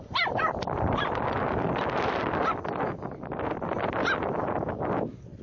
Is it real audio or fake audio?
real